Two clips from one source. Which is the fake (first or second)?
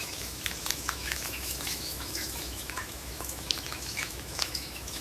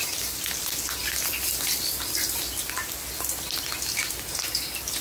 first